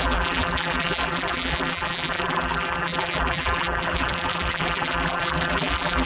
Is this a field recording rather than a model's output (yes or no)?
no